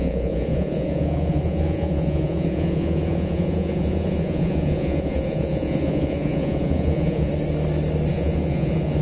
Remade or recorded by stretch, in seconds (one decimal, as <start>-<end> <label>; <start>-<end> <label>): 0.0-7.3 remade; 7.3-8.1 recorded; 8.1-9.0 remade